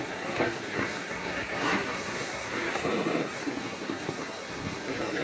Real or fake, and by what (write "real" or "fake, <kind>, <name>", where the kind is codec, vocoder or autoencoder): fake, codec, SNAC